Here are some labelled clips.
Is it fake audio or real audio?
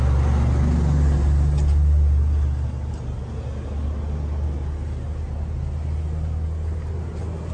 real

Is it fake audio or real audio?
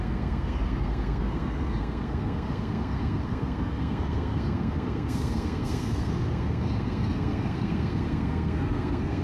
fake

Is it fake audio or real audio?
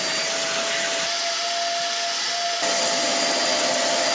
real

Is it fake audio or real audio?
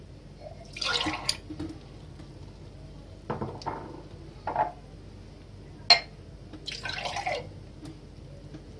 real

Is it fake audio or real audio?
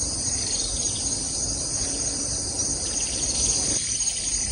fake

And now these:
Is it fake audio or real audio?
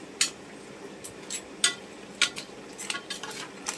real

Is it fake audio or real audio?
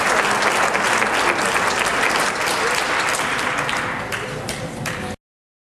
real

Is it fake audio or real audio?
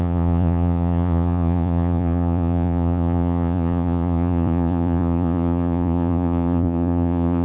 fake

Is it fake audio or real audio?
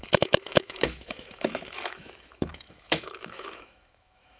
fake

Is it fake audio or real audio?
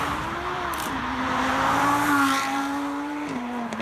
fake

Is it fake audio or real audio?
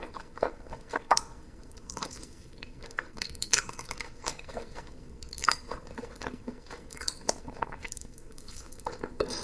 fake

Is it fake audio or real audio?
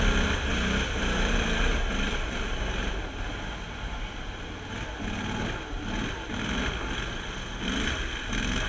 real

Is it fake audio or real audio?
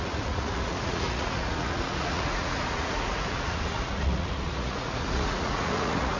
fake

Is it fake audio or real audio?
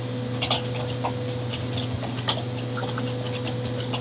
real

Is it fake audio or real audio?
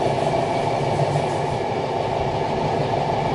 real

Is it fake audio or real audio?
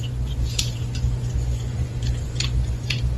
fake